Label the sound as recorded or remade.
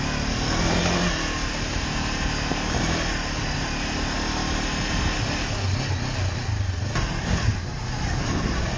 recorded